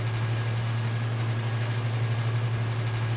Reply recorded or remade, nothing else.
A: recorded